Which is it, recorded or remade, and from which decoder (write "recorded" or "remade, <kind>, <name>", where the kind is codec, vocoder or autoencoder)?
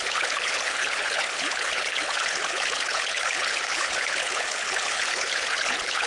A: remade, codec, HILCodec